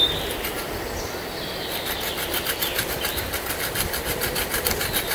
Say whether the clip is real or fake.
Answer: real